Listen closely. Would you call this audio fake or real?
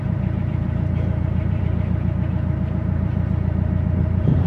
fake